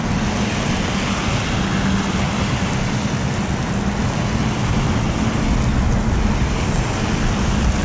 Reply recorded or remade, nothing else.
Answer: recorded